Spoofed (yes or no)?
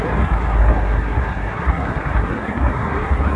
yes